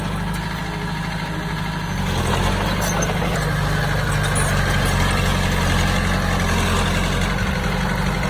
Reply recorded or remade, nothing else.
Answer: recorded